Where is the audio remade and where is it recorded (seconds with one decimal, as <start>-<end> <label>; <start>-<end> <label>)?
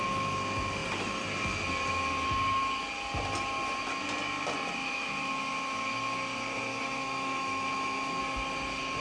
0.0-4.8 recorded; 4.8-5.3 remade; 5.3-6.7 recorded; 6.7-8.2 remade; 8.2-9.0 recorded